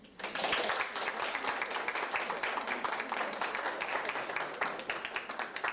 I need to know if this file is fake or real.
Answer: real